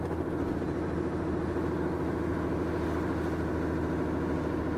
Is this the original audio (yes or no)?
yes